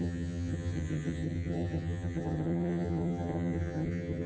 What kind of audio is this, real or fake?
fake